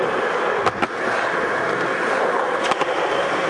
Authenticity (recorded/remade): recorded